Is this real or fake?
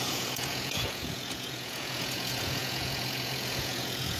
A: fake